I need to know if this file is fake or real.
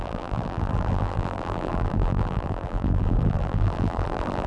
fake